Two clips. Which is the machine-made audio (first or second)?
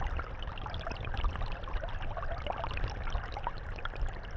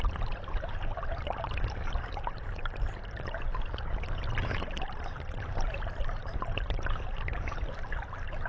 second